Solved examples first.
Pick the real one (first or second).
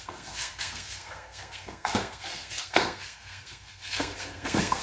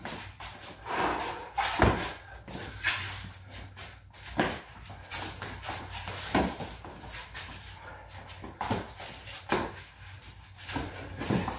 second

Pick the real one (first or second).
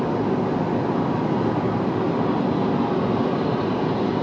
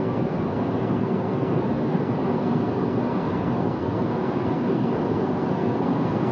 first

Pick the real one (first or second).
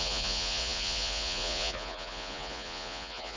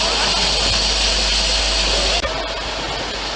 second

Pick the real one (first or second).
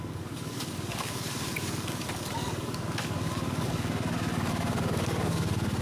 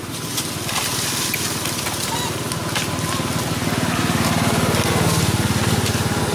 second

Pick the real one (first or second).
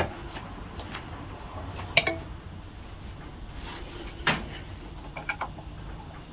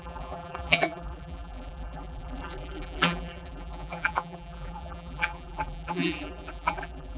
first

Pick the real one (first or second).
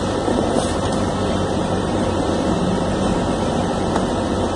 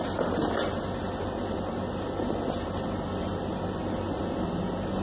second